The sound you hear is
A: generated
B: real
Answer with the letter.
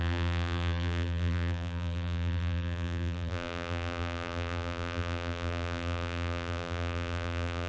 A